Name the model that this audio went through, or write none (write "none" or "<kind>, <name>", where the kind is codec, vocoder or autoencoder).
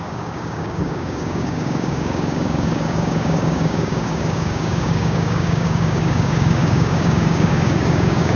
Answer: codec, DAC